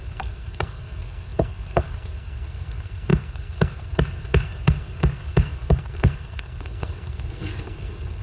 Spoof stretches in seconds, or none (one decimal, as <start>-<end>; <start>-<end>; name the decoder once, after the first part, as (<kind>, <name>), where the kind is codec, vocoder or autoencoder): 0.0-8.2 (codec, SNAC)